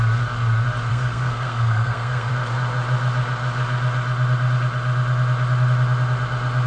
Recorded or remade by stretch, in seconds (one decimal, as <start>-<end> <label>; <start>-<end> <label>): 0.0-0.9 recorded; 0.9-2.3 remade; 2.3-6.7 recorded